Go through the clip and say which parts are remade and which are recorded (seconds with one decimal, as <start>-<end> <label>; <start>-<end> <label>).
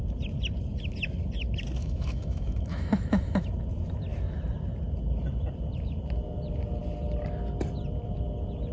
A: 0.0-1.8 recorded; 1.8-3.5 remade; 3.5-8.7 recorded